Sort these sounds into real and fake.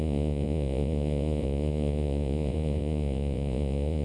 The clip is fake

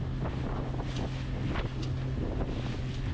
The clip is real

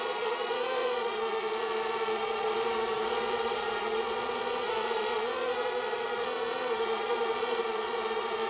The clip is fake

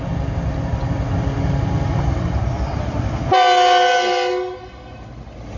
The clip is real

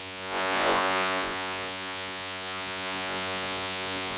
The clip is fake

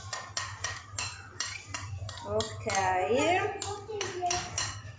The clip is real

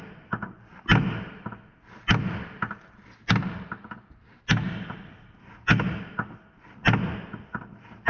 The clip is real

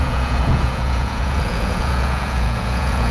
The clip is fake